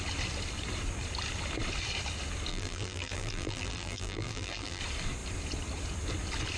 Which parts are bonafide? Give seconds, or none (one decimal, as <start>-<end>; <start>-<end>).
0.0-2.5; 4.8-6.6